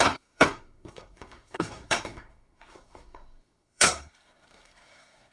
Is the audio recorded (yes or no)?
no